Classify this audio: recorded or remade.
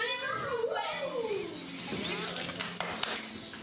recorded